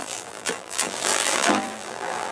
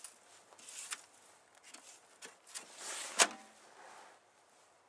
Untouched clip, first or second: second